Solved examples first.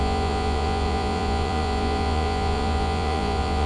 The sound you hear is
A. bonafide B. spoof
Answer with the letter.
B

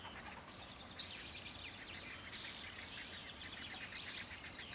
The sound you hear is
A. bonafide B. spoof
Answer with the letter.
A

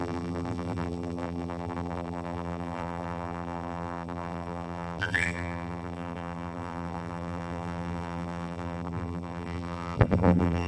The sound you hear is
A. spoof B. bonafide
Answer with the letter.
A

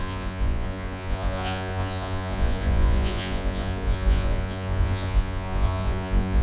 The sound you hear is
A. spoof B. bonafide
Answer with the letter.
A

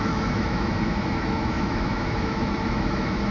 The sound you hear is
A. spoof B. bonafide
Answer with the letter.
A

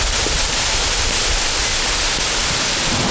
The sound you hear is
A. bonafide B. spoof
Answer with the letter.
A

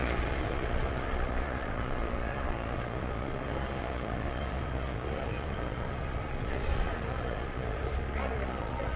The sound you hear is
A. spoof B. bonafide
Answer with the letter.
A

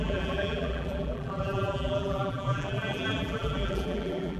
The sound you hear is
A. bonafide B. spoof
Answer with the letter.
B